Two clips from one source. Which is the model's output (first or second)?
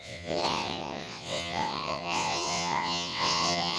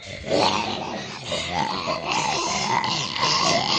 first